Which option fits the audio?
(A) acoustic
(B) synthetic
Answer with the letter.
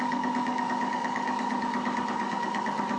B